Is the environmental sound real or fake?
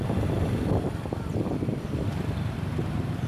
fake